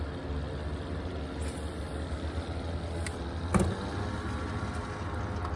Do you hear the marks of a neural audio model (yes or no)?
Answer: no